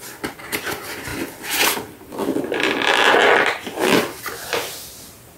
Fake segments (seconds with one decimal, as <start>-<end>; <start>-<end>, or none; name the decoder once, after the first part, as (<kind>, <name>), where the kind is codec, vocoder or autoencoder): none